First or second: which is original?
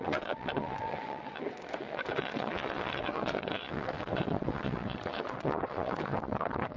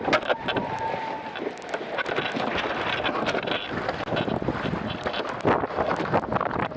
second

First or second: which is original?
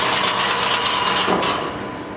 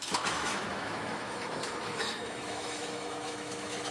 first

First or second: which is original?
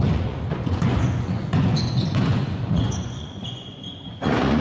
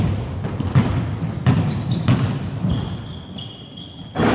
second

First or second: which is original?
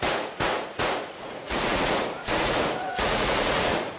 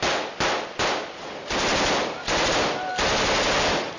second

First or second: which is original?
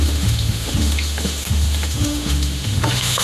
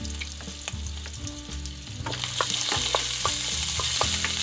second